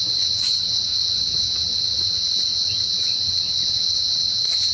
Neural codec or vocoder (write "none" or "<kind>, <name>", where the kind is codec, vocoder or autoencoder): vocoder, WaveNeXt